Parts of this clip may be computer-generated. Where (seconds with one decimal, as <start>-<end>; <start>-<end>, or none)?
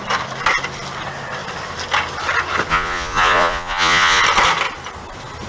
2.7-4.2